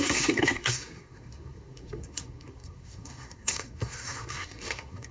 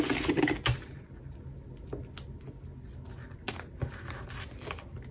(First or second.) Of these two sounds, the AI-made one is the first